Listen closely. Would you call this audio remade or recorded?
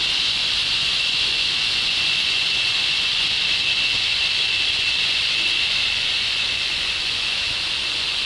remade